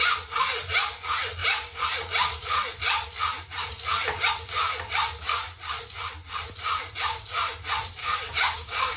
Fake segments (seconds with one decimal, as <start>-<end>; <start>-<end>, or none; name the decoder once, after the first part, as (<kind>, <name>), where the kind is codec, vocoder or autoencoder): 8.0-9.0 (codec, DAC)